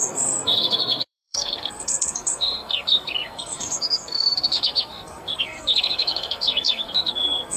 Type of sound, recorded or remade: remade